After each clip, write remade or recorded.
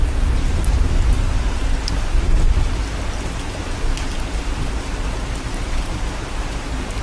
recorded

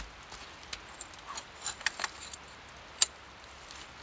recorded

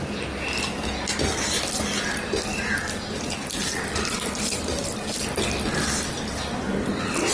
recorded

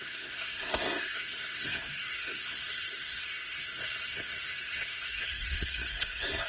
remade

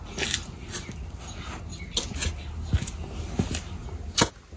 recorded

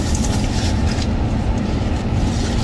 recorded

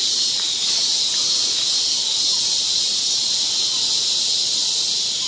recorded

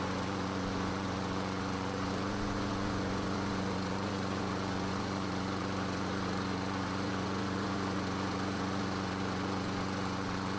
remade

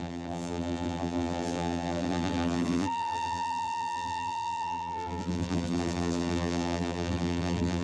remade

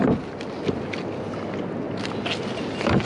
recorded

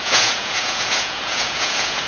remade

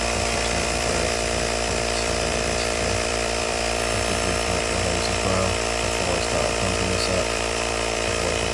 remade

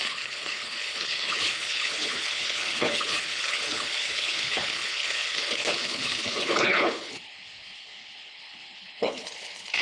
remade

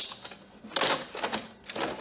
recorded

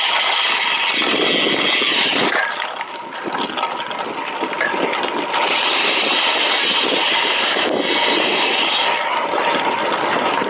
recorded